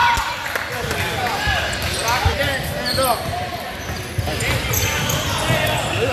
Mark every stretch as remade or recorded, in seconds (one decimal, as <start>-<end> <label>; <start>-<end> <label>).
0.0-6.1 recorded